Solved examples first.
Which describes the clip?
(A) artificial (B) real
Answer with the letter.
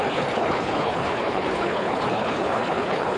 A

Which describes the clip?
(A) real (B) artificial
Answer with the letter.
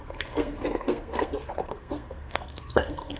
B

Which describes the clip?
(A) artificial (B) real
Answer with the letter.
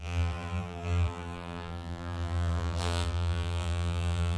A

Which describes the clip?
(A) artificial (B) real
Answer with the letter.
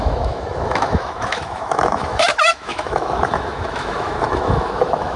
A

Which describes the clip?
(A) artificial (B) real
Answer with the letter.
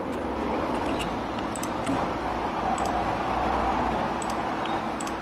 A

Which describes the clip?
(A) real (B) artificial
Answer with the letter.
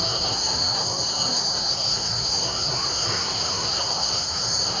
B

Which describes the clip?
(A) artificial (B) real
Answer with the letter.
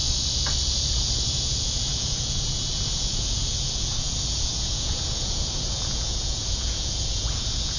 A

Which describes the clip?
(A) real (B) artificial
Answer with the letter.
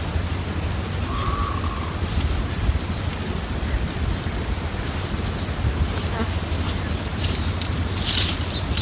A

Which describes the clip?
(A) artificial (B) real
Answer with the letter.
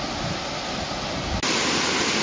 B